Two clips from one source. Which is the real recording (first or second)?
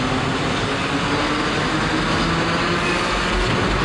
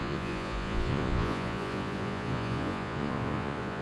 first